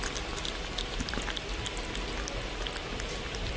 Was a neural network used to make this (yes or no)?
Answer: no